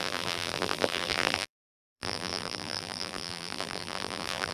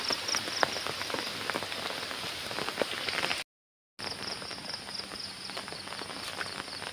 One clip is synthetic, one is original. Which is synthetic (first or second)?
first